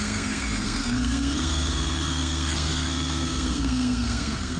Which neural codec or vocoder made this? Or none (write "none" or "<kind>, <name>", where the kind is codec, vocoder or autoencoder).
codec, SNAC